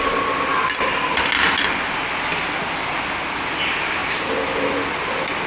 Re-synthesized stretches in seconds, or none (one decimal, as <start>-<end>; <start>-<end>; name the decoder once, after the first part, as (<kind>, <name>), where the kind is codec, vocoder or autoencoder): none

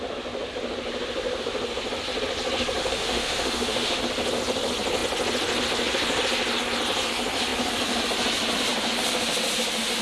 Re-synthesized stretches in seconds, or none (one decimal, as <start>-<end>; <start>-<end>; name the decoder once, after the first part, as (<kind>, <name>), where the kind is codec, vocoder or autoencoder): 2.8-4.0 (autoencoder, DAC-VAE)

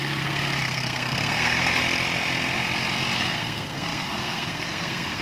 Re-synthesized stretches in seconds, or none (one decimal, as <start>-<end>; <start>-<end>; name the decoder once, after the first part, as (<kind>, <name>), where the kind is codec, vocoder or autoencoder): 0.0-1.8 (codec, SNAC); 3.2-5.2

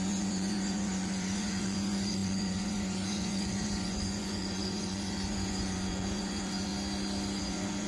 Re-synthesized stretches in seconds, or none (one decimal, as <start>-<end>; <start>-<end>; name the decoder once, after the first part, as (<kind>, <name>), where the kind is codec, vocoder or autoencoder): 0.0-6.7 (vocoder, Vocos); 7.4-7.9

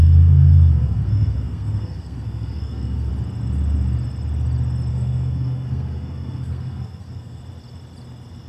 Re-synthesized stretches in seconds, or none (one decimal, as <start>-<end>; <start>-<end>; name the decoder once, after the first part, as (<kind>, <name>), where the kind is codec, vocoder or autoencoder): 0.0-3.1 (codec, SNAC); 4.9-7.4

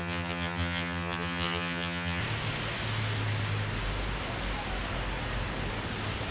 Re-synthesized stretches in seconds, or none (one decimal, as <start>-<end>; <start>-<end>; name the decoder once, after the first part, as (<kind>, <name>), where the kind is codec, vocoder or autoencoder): 0.0-2.2 (vocoder, HiFi-GAN)